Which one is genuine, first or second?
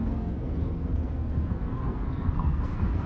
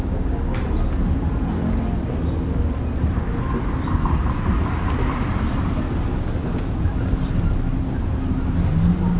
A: second